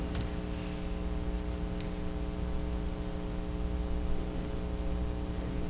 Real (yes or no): yes